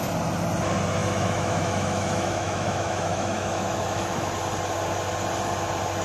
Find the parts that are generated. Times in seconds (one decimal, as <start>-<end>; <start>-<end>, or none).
1.0-4.3